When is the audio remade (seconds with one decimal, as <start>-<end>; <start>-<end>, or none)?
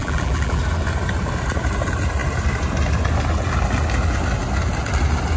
0.0-0.6